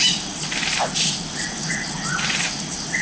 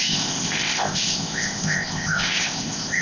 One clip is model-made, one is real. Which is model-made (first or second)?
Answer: second